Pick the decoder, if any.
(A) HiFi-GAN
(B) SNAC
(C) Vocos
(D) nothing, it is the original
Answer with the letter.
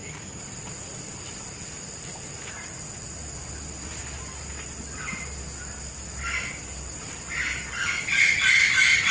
D